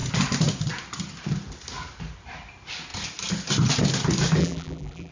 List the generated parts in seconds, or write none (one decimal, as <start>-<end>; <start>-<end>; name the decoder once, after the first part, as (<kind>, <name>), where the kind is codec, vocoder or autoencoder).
4.4-5.1 (vocoder, BigVGAN v2)